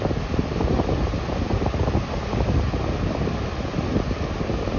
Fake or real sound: real